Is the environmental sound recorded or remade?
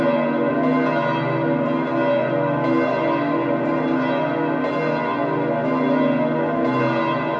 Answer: recorded